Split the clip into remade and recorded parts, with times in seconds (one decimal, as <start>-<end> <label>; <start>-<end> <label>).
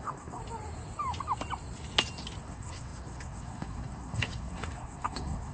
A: 0.0-0.4 remade; 0.4-2.4 recorded; 2.4-5.5 remade